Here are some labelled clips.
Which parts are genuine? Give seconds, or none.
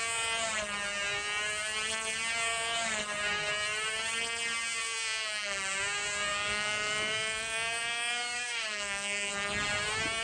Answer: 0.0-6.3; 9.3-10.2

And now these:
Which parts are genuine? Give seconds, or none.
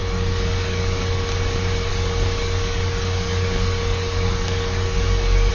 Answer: 1.2-1.9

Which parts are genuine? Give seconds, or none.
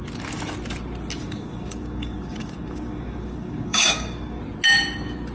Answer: 0.0-1.2; 4.4-5.3